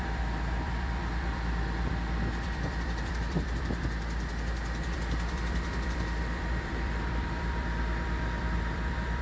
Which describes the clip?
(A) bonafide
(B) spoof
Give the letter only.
B